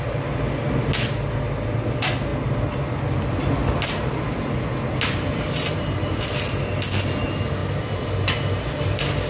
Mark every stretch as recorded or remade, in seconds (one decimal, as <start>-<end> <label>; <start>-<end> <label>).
0.0-9.3 recorded